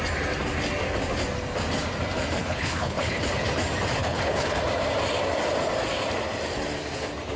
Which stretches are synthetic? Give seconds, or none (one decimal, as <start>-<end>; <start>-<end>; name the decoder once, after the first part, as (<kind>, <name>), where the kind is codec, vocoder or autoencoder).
2.4-3.2 (codec, HILCodec); 4.0-4.6